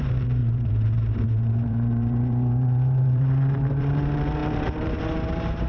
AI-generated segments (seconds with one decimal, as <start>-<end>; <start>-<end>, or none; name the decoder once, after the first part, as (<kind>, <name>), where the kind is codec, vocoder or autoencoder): 0.0-5.7 (vocoder, BigVGAN v2)